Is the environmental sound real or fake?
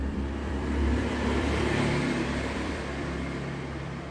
fake